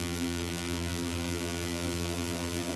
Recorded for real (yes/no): no